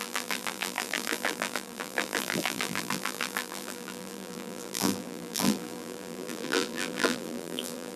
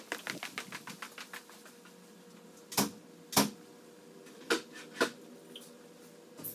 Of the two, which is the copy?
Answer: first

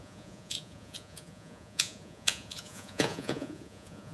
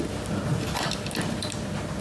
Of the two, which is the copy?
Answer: first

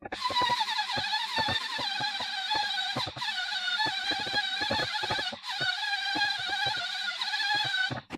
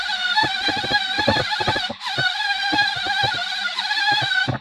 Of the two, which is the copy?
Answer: first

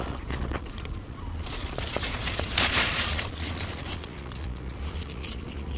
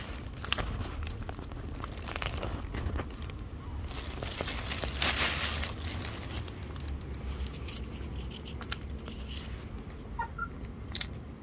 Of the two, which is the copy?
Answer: first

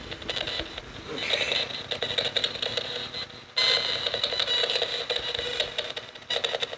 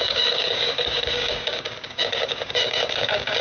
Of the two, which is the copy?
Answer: second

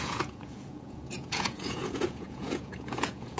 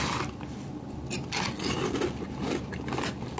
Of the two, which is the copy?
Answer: first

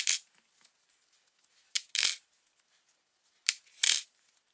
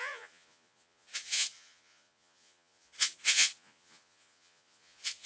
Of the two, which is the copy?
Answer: second